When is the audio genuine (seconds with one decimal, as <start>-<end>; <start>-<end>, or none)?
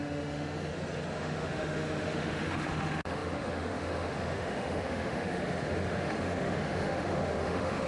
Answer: 0.7-1.2